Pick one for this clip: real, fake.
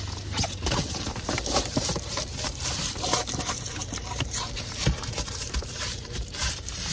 fake